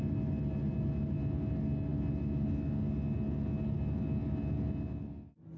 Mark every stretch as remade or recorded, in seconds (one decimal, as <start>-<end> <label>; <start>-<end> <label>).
0.0-5.6 recorded